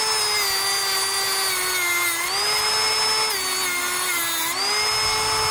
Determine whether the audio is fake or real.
real